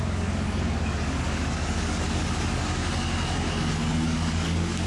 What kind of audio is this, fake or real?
fake